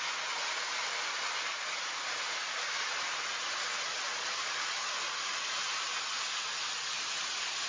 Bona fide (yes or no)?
yes